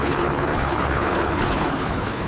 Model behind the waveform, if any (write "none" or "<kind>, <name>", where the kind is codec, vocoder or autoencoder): codec, HILCodec